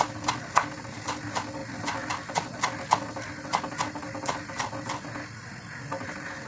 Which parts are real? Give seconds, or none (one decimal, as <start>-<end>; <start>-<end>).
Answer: 0.0-1.6; 2.1-6.5